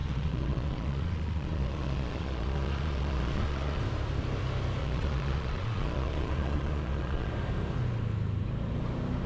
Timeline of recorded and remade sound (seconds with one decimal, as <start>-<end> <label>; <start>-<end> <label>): 0.0-3.8 remade; 3.8-4.8 recorded; 4.8-7.3 remade; 7.3-9.3 recorded